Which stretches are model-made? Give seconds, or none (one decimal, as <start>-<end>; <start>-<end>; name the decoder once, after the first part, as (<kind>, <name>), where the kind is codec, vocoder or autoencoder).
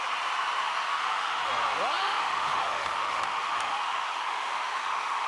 0.6-1.5 (autoencoder, DAC-VAE); 2.0-5.3